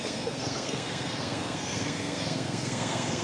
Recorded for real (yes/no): no